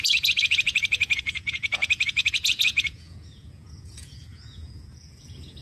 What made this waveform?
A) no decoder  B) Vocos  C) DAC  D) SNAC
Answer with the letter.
B